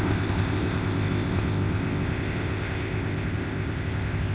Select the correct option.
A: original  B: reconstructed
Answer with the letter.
B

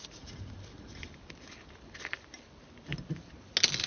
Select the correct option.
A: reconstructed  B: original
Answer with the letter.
B